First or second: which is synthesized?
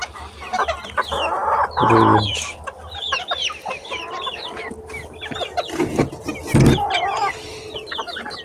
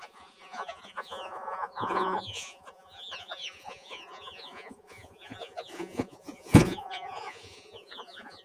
second